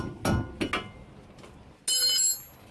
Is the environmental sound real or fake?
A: real